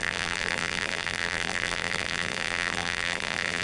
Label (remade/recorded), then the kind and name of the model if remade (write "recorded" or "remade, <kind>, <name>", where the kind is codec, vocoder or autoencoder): remade, vocoder, BigVGAN v2